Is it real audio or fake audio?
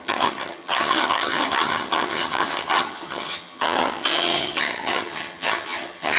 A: fake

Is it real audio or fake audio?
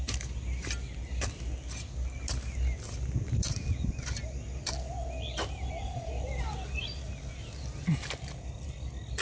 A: real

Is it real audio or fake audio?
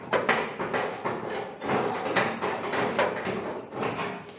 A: real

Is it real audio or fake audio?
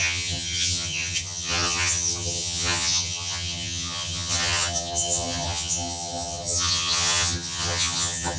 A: fake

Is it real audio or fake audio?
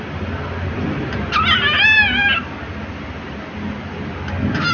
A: real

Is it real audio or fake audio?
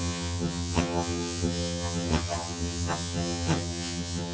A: fake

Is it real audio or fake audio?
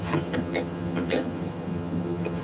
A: fake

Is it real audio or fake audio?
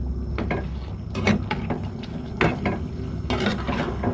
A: real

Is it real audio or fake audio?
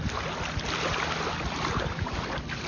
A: real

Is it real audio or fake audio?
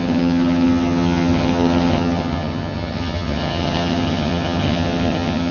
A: fake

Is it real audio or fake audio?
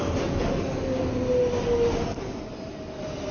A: real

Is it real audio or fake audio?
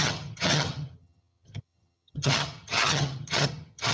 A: fake